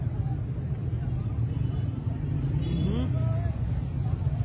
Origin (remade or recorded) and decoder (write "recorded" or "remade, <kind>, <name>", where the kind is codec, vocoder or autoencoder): recorded